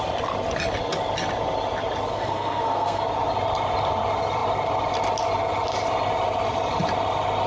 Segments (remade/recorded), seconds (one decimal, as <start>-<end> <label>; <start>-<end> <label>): 0.0-2.1 recorded; 2.1-3.0 remade; 3.0-7.5 recorded